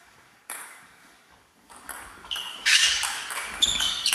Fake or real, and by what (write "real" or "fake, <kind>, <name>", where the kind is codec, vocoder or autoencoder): fake, codec, DAC